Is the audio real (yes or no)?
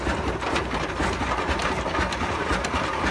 no